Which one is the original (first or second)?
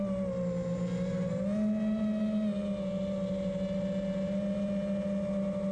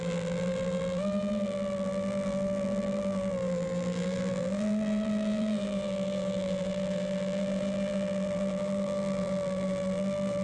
first